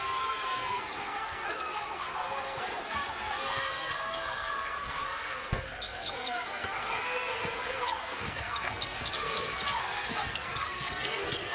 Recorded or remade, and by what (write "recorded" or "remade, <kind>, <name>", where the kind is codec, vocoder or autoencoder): remade, codec, SNAC